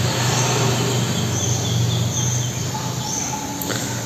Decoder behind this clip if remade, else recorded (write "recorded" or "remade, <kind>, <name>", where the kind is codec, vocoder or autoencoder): recorded